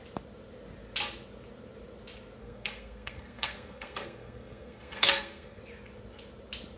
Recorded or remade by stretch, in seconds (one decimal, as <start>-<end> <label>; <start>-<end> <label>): 0.0-2.4 recorded; 2.4-5.6 remade; 5.6-6.8 recorded